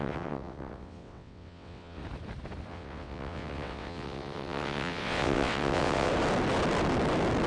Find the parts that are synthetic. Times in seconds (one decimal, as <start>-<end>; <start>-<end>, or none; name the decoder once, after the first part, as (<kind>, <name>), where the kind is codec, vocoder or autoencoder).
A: 0.0-2.0 (vocoder, WaveNeXt); 2.7-6.1